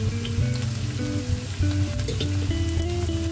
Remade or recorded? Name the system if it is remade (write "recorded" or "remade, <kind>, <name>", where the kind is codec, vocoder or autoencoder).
recorded